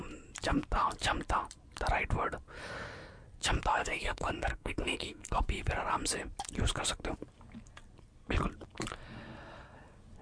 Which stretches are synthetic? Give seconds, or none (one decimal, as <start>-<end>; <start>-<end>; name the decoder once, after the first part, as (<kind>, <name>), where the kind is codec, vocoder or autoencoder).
3.8-5.4 (codec, SNAC)